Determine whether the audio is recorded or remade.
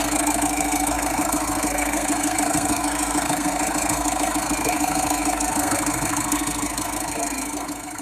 remade